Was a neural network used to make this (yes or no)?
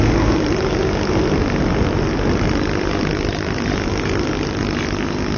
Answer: no